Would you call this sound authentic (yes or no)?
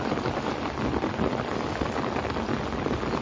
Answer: yes